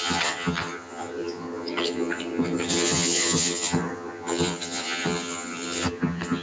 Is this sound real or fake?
fake